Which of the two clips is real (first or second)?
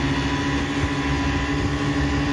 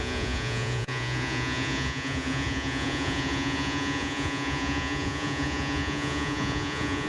first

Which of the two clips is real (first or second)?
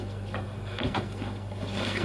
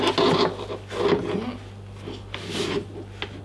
second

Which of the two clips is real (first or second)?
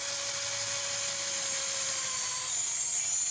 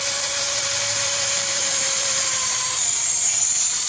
first